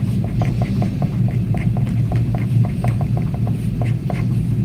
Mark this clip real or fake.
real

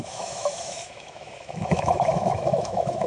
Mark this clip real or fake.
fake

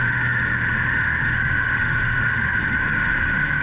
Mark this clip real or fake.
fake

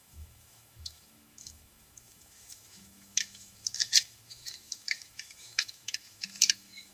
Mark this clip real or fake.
fake